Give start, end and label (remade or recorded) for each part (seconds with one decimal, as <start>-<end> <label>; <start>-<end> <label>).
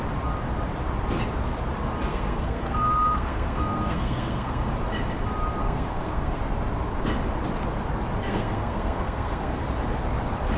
0.0-2.1 recorded; 2.1-4.7 remade; 4.7-5.6 recorded; 5.6-6.4 remade; 6.4-8.2 recorded; 8.2-9.6 remade; 9.6-10.6 recorded